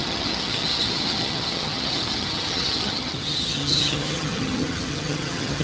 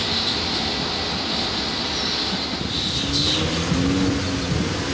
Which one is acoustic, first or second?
second